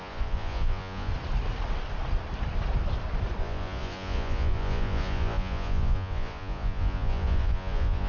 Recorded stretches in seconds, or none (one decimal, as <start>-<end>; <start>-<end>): 1.1-3.4